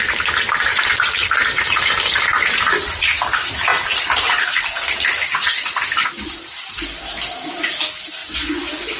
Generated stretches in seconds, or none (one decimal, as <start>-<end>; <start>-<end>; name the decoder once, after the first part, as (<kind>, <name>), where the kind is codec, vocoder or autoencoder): 8.2-9.0 (vocoder, Vocos)